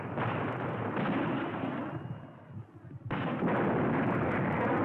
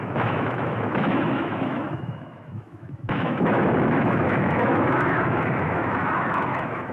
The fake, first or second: second